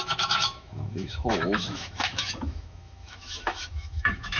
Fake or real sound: fake